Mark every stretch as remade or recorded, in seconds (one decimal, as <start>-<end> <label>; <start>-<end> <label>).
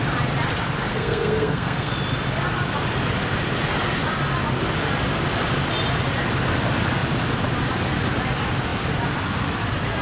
0.0-0.9 recorded; 0.9-1.9 remade; 1.9-10.0 recorded